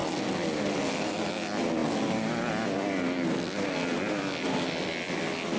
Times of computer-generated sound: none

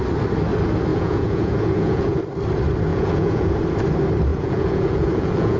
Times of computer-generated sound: 0.9-2.2 (vocoder, Vocos); 2.9-3.6; 4.3-5.6

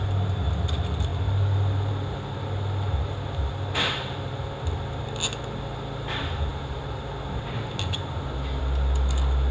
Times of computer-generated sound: none

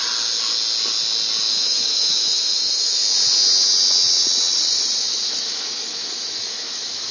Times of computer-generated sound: 1.5-3.0 (autoencoder, DAC-VAE); 5.0-7.1